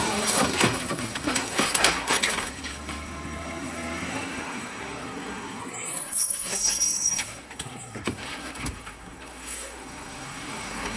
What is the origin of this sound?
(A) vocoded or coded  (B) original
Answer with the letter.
A